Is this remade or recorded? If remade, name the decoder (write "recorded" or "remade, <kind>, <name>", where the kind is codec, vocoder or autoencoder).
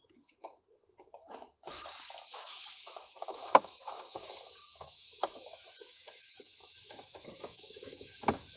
remade, autoencoder, DAC-VAE